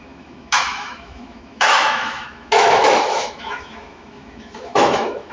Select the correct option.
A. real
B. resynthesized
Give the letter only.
B